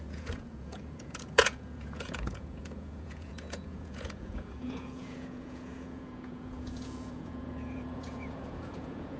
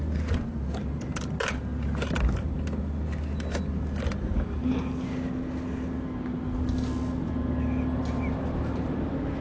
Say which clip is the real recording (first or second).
second